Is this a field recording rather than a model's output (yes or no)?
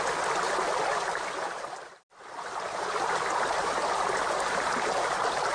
yes